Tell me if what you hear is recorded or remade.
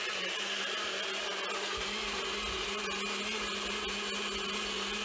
recorded